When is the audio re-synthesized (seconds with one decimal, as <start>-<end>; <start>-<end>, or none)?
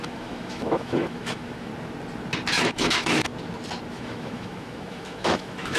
0.0-1.7; 2.6-3.3; 3.9-5.8